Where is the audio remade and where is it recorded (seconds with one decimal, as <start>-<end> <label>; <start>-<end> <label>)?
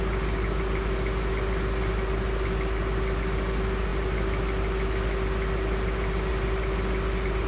0.0-7.5 recorded